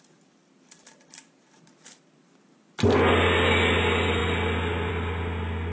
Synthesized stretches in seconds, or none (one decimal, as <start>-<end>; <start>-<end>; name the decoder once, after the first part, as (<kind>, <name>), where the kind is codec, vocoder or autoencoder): none